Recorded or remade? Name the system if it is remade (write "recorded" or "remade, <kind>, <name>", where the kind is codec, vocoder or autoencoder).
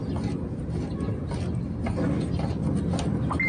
recorded